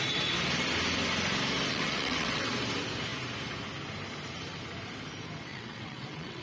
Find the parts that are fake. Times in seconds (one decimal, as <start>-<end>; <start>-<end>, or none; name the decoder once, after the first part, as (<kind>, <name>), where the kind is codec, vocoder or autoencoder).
1.7-2.5 (vocoder, WaveNeXt); 5.5-6.4